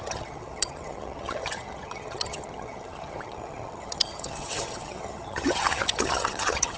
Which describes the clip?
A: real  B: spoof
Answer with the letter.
B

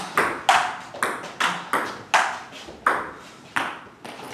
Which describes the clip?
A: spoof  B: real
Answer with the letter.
B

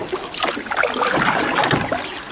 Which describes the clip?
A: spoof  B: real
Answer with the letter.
B